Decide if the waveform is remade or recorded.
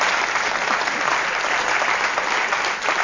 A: recorded